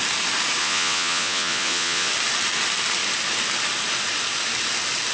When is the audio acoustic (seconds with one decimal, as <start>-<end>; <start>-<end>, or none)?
0.0-0.6; 2.1-5.1

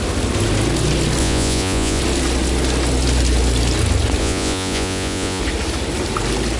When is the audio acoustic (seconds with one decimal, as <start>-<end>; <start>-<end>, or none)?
0.0-1.2; 2.0-4.2; 5.4-6.6

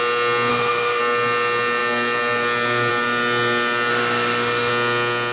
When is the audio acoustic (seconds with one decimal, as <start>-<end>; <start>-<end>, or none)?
0.0-0.5; 1.0-3.9; 4.7-5.3

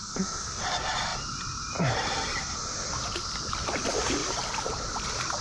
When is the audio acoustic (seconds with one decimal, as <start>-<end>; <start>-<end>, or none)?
0.6-5.4

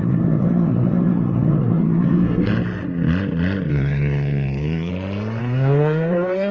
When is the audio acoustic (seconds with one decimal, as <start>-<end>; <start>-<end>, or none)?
2.5-3.7; 4.9-5.4

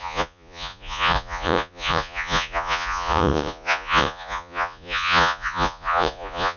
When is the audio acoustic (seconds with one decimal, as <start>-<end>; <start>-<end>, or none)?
none